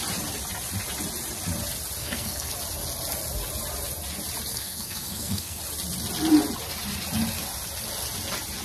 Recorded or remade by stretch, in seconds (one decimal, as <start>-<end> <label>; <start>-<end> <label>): 0.0-2.0 recorded; 2.0-2.5 remade; 2.5-4.5 recorded; 4.5-5.6 remade; 5.6-8.6 recorded